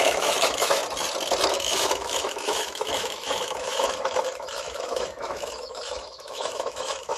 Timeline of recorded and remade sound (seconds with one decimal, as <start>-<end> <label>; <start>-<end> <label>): 0.0-0.8 remade; 0.8-1.5 recorded; 1.5-7.2 remade